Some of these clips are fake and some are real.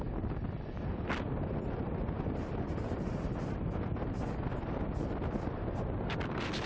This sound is real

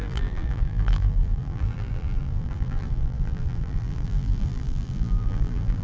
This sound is fake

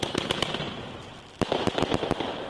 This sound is real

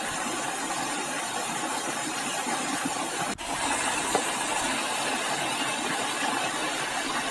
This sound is real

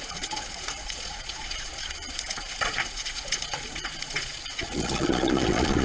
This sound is fake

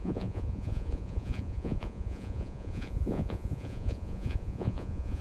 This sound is fake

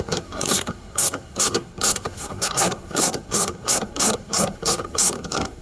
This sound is fake